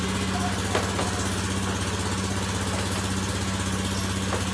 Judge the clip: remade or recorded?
recorded